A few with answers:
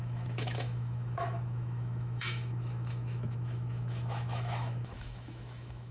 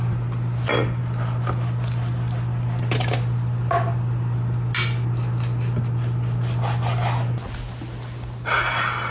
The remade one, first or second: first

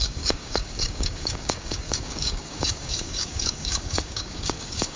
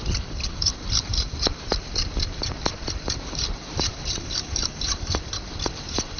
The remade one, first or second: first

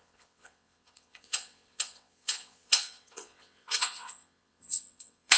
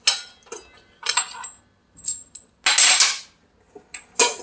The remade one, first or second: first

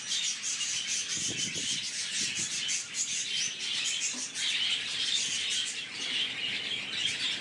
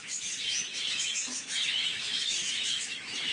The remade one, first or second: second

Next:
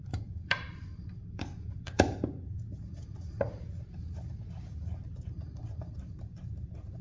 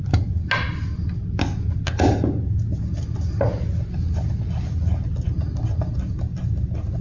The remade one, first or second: first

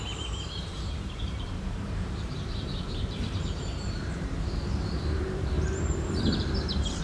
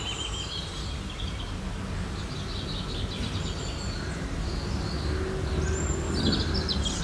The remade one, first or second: first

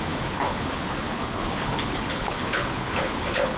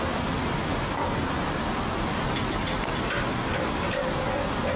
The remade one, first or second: first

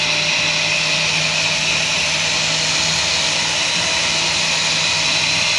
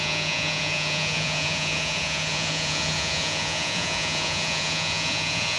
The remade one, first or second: second